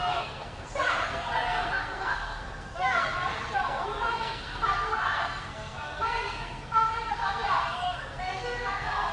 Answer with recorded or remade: remade